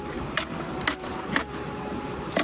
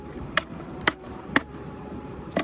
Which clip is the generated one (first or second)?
second